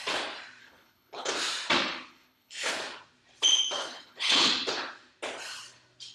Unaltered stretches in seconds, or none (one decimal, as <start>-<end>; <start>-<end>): 0.0-0.6; 1.3-2.1; 2.7-3.8; 4.5-6.1